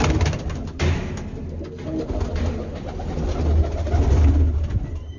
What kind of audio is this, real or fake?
real